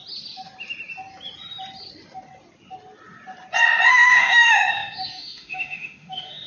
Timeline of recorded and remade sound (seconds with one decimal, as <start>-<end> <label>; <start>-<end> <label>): 0.0-3.9 recorded; 3.9-6.5 remade